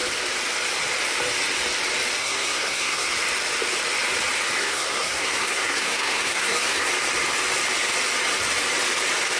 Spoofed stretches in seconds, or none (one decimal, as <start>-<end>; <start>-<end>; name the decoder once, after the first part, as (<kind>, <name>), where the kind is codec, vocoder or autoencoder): 2.2-3.1 (codec, SNAC); 4.6-6.9